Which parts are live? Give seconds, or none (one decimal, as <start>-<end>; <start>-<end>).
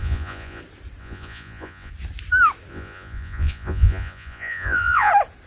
0.6-1.0; 1.9-2.7; 5.1-5.5